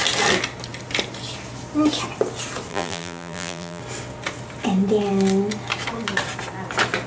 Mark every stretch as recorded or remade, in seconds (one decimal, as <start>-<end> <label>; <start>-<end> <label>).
0.0-2.7 recorded; 2.7-3.8 remade; 3.8-7.1 recorded